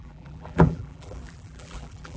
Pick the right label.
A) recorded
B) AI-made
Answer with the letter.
B